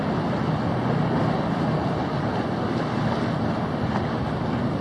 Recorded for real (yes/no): yes